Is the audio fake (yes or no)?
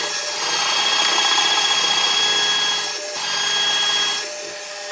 no